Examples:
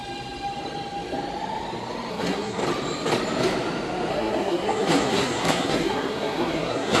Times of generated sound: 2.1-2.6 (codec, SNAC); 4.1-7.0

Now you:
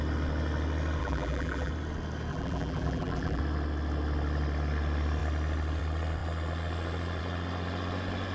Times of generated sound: 1.0-1.7 (vocoder, BigVGAN v2); 2.3-3.4

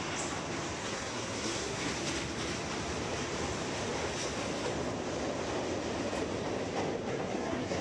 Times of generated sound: 0.8-1.9 (codec, SNAC); 7.1-7.8

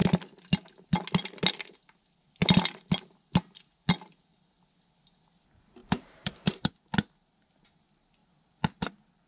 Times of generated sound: 5.8-6.7 (vocoder, BigVGAN v2)

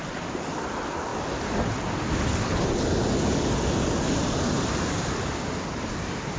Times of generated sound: none

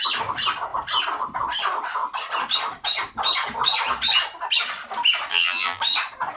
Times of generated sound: 5.3-5.8 (vocoder, BigVGAN v2)

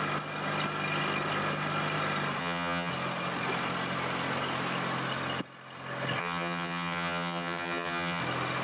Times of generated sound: 2.4-2.9 (vocoder, HiFi-GAN); 6.2-8.2

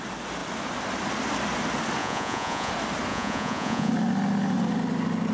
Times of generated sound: 2.0-2.7 (vocoder, Vocos); 3.1-3.9